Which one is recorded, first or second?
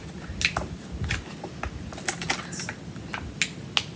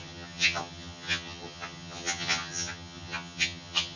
first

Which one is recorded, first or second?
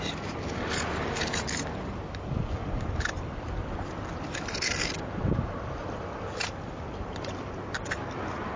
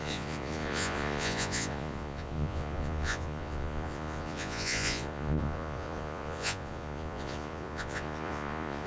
first